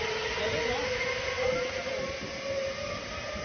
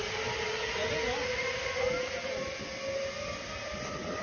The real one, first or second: second